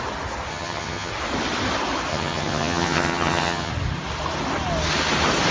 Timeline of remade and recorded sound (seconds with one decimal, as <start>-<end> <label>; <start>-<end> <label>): 0.0-0.5 recorded; 0.5-1.1 remade; 1.1-2.1 recorded; 2.1-3.7 remade; 3.7-5.5 recorded